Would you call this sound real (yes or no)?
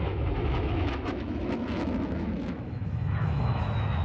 no